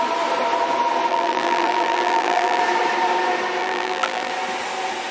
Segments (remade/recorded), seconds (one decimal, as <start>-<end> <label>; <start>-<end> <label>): 0.0-1.1 recorded; 1.1-2.6 remade; 2.6-3.6 recorded; 3.6-4.3 remade; 4.3-5.1 recorded